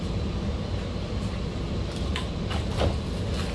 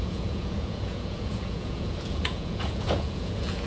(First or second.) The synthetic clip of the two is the second